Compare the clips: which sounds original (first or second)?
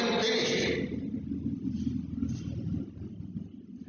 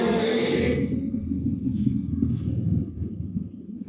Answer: first